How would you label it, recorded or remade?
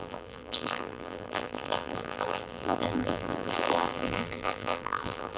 remade